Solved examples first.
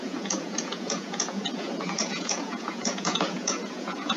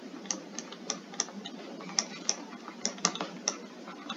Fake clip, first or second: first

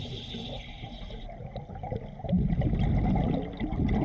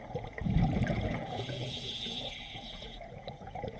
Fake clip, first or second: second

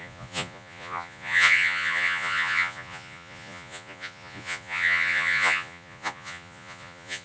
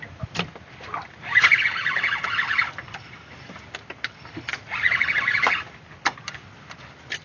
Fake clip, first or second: first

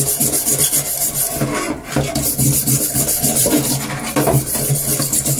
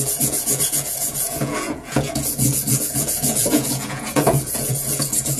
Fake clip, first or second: second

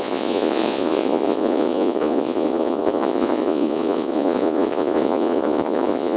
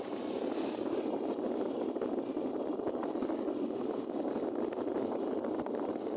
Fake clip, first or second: first